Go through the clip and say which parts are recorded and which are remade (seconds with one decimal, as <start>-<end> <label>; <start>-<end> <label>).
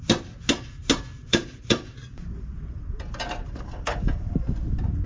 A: 0.0-1.2 recorded; 1.2-4.3 remade; 4.3-5.1 recorded